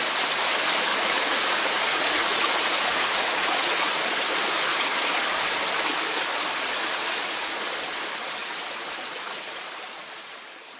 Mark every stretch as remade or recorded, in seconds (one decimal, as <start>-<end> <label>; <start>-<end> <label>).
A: 0.0-0.9 recorded; 0.9-4.0 remade; 4.0-7.0 recorded; 7.0-7.5 remade; 7.5-8.4 recorded; 8.4-9.7 remade; 9.7-10.8 recorded